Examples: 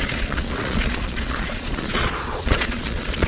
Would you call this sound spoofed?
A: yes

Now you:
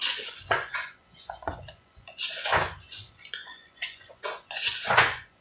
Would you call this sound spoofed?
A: yes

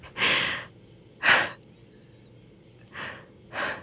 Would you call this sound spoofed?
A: no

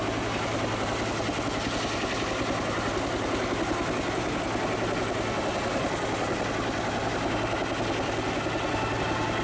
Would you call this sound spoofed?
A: no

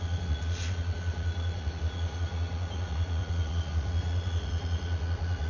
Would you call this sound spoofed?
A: yes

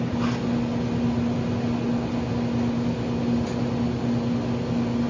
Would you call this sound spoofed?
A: no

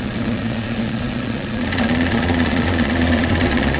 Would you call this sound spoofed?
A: yes